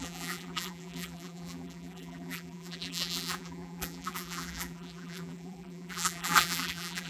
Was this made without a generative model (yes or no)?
no